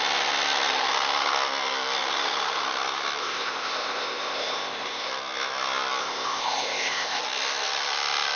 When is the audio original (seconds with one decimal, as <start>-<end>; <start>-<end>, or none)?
0.0-3.2; 5.1-6.0; 7.2-8.4